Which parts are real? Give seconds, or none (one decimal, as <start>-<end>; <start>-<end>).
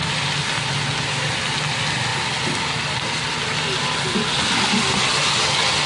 0.0-5.9